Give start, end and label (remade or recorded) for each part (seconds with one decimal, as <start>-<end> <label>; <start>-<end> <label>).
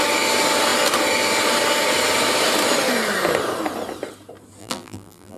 0.0-4.6 recorded; 4.6-5.4 remade